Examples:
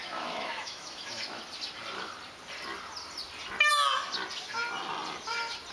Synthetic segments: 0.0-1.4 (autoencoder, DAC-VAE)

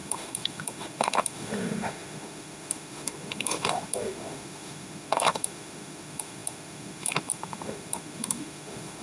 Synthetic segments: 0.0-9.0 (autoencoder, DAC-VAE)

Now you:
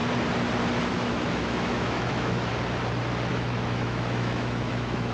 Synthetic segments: 0.9-2.5 (autoencoder, DAC-VAE); 3.3-5.1

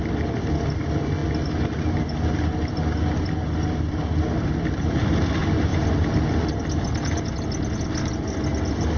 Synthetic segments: none